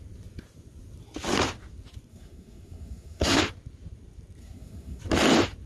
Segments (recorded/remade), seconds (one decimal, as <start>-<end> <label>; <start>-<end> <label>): 0.0-2.1 recorded; 2.1-3.4 remade; 3.4-4.4 recorded; 4.4-5.0 remade; 5.0-5.7 recorded